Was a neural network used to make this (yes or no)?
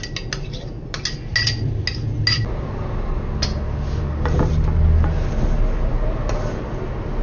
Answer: no